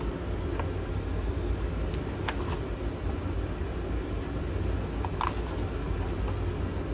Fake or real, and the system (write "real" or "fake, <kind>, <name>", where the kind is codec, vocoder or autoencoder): real